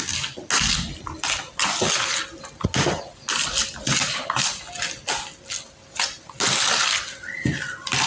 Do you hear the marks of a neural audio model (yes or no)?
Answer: no